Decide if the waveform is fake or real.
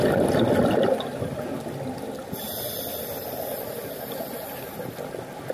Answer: real